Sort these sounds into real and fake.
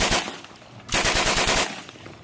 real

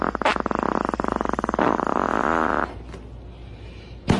real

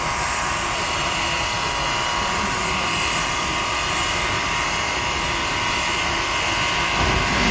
real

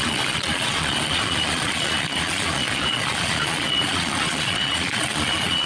fake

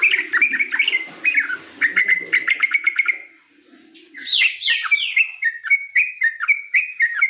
real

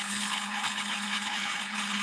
fake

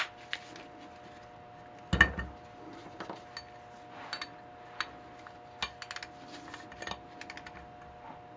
real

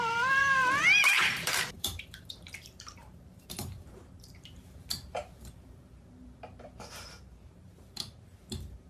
fake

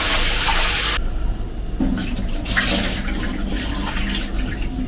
real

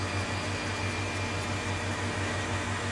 real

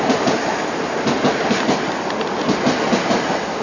real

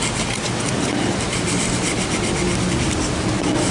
real